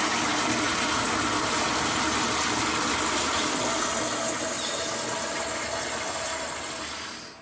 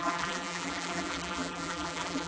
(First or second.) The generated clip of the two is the second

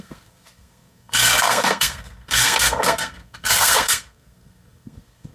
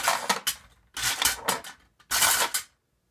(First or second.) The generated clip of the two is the first